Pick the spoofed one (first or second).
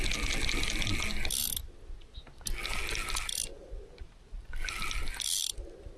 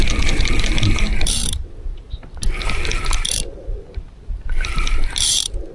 second